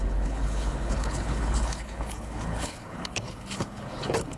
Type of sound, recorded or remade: remade